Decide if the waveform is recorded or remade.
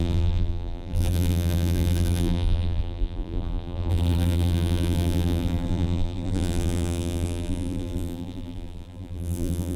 remade